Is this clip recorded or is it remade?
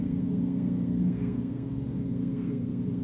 remade